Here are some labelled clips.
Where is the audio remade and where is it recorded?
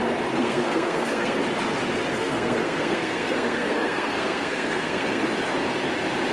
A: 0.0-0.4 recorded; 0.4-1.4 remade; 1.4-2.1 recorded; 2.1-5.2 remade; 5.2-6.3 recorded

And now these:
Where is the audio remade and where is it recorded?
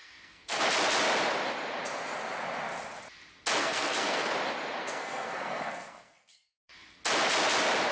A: 0.0-0.6 remade; 0.6-3.6 recorded; 3.6-4.3 remade; 4.3-4.8 recorded; 4.8-7.0 remade; 7.0-7.9 recorded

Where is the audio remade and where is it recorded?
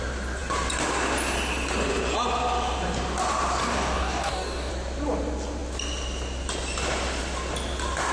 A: 0.0-3.6 recorded; 3.6-4.7 remade; 4.7-8.1 recorded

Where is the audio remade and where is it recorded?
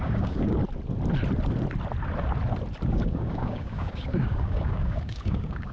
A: 0.0-0.6 remade; 0.6-2.9 recorded; 2.9-5.7 remade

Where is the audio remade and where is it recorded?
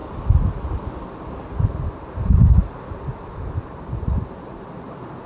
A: 0.0-5.3 recorded